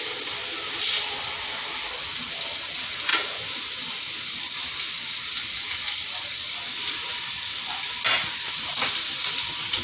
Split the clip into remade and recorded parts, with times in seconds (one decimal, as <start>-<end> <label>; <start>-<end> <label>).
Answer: 0.0-9.8 recorded